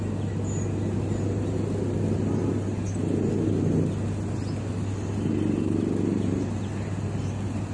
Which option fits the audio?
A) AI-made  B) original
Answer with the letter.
B